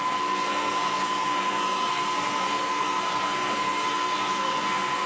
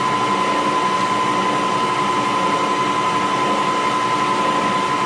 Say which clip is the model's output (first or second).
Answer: first